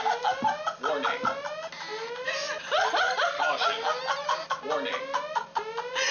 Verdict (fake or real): real